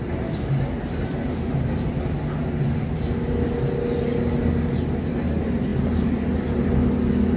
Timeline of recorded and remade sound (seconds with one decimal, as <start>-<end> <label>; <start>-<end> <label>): 0.0-7.4 recorded